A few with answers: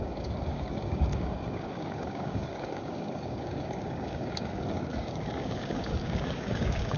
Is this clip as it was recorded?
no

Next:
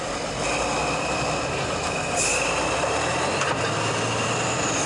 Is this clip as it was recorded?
yes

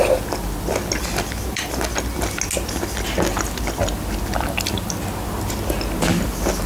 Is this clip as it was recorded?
yes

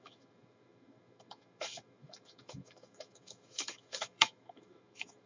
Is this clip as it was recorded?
no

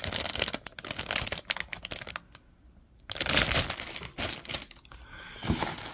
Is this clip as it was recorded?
yes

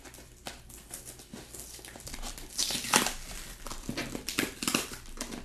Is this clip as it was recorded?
yes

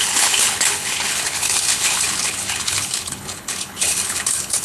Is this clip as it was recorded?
no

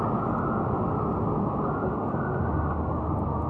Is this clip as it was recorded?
yes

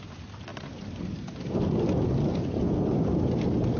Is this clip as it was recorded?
yes